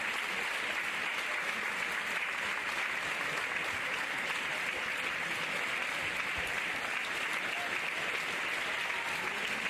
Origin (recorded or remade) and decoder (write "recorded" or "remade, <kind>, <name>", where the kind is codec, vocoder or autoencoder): recorded